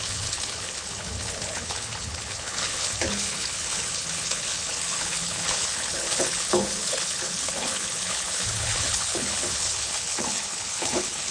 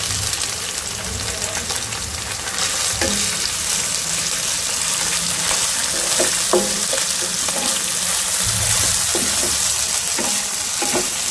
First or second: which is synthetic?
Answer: first